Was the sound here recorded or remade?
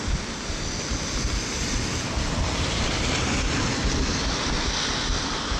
recorded